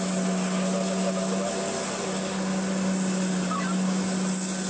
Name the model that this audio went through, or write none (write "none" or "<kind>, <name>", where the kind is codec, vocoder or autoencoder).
none